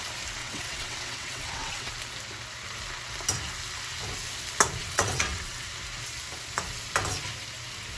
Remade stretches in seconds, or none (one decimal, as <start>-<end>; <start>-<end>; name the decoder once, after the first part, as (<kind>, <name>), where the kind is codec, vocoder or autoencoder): 0.4-1.9 (vocoder, WaveNeXt); 4.8-5.7